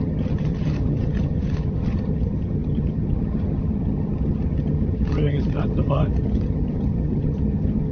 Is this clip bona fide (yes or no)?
no